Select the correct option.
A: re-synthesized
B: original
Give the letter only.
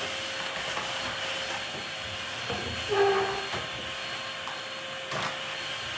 B